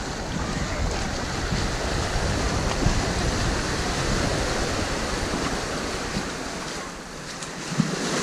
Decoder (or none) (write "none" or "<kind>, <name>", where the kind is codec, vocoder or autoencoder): none